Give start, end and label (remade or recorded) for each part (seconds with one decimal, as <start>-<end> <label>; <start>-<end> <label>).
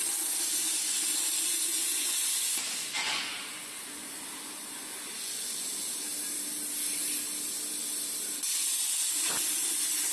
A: 0.0-1.7 recorded; 1.7-5.7 remade; 5.7-10.1 recorded